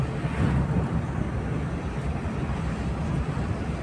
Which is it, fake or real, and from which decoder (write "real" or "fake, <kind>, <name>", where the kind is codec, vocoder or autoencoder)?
real